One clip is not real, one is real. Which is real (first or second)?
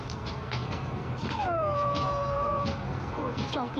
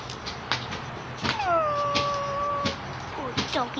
second